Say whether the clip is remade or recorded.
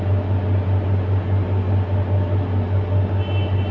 recorded